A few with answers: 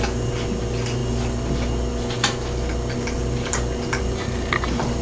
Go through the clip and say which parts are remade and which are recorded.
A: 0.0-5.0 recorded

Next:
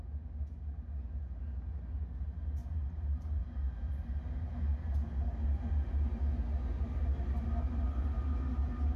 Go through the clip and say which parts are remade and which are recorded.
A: 0.0-2.6 recorded; 2.6-5.9 remade; 5.9-9.0 recorded

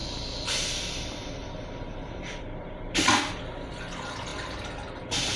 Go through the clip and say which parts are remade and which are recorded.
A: 0.0-3.2 remade; 3.2-4.3 recorded; 4.3-5.0 remade; 5.0-5.4 recorded